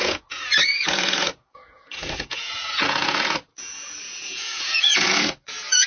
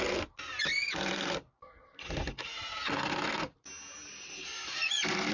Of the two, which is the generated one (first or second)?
first